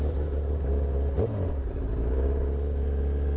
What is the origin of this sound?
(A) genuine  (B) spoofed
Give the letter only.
A